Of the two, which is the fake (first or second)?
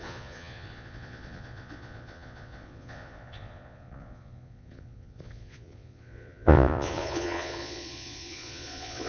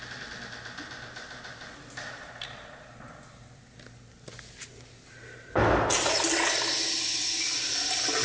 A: first